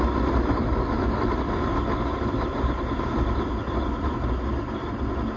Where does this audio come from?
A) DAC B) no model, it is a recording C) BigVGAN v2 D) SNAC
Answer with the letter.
B